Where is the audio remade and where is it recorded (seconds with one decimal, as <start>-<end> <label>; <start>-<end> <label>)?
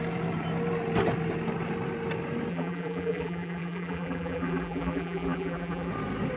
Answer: 0.0-2.5 recorded; 2.5-5.9 remade; 5.9-6.4 recorded